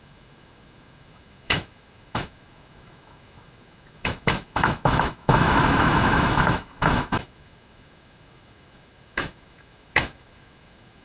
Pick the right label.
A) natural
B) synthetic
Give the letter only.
B